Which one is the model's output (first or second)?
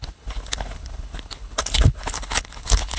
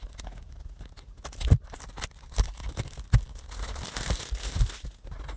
first